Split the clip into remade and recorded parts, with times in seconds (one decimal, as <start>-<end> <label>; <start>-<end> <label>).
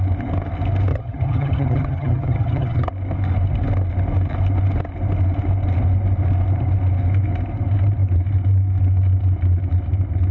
0.0-0.9 recorded; 0.9-2.9 remade; 2.9-10.3 recorded